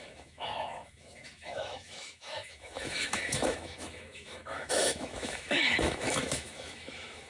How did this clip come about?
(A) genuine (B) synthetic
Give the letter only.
B